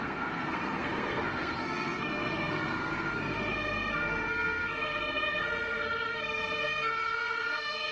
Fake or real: fake